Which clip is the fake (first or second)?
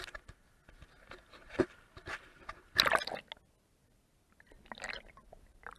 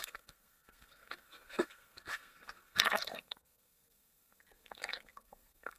second